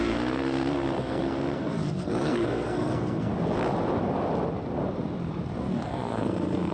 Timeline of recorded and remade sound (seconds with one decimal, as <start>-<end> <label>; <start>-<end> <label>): 0.0-3.3 remade; 3.3-5.6 recorded; 5.6-6.7 remade